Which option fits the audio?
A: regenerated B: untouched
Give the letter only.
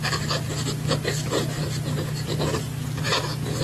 B